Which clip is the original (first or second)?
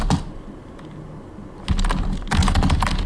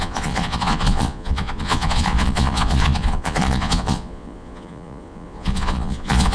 first